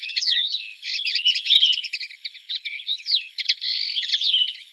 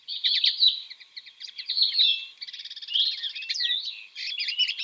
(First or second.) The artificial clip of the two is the first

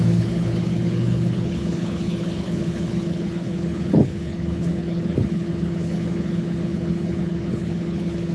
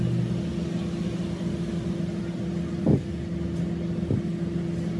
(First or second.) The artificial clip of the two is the first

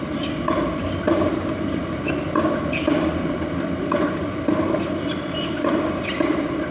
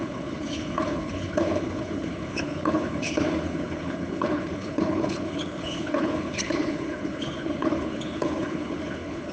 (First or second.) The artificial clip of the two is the second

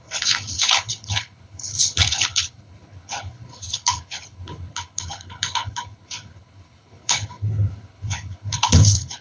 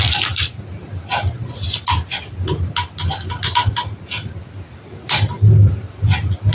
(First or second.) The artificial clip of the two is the first